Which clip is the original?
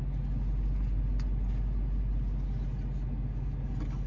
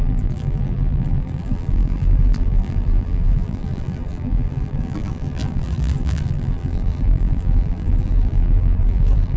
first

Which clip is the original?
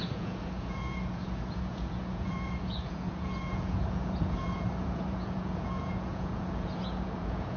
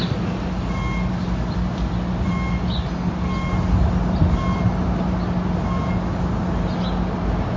second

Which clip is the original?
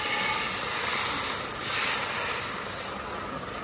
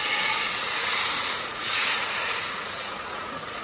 first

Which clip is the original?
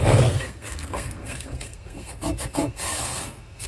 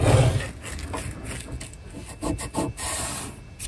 second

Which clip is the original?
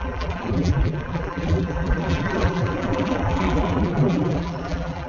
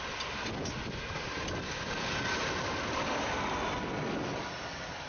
second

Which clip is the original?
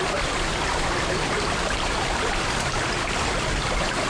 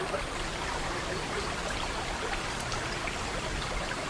second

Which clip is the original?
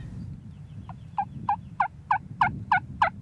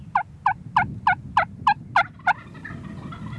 second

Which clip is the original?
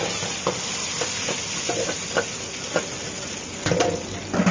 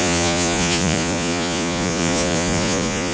first